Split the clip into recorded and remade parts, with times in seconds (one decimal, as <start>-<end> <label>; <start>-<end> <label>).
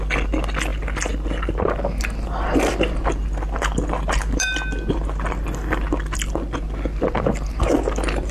0.0-8.3 recorded